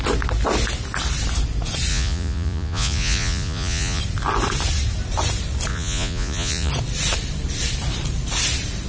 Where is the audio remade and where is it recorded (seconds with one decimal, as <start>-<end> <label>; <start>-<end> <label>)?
0.0-1.9 recorded; 1.9-4.0 remade; 4.0-5.7 recorded; 5.7-6.7 remade; 6.7-8.9 recorded